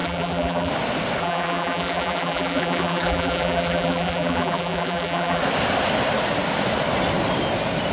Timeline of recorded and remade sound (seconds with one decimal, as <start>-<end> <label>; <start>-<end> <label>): 0.0-0.7 remade; 0.7-1.2 recorded; 1.2-5.4 remade; 5.4-7.9 recorded